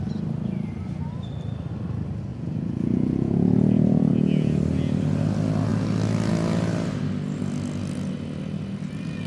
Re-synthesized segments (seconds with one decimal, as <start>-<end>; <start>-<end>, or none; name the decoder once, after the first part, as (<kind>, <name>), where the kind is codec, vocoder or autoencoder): 2.3-4.1 (vocoder, Vocos)